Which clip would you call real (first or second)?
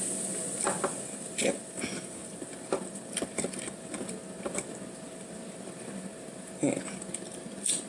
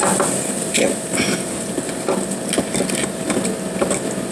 second